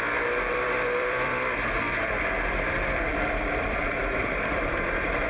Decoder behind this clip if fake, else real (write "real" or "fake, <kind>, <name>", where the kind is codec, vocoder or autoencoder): fake, vocoder, BigVGAN v2